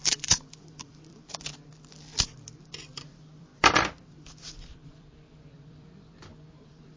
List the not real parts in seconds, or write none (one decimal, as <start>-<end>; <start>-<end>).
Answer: 0.7-1.5; 2.7-7.0